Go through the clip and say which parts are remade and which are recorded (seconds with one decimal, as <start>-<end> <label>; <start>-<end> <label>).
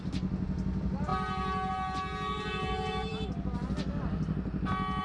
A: 0.0-5.0 recorded